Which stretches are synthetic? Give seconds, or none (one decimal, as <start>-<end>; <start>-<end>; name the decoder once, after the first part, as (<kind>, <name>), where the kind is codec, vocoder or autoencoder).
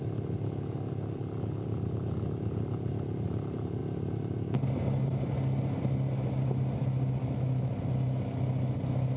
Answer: 7.2-7.7 (autoencoder, DAC-VAE)